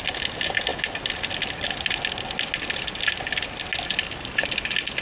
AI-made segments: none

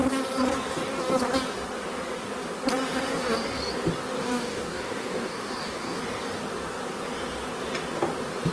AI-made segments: 4.2-6.0 (codec, DAC)

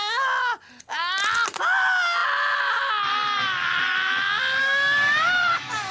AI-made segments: 4.6-5.9 (codec, DAC)

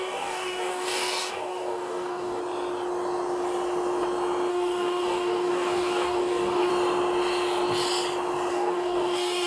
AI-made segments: 0.0-2.4 (codec, DAC); 4.5-6.7; 8.5-9.5

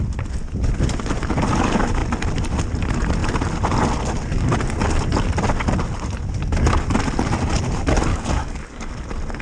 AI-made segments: 8.1-8.9 (codec, DAC)